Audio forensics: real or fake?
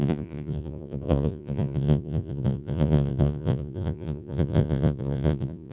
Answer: fake